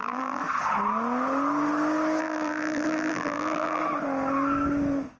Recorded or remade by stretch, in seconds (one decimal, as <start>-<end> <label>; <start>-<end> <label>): 0.0-0.4 remade; 0.4-2.2 recorded; 2.2-3.8 remade; 3.8-5.2 recorded